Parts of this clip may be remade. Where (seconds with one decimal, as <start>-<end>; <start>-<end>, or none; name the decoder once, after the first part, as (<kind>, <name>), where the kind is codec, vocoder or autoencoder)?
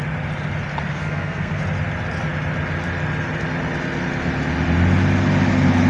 0.9-1.6 (codec, SNAC)